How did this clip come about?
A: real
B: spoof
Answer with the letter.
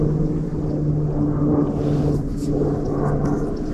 A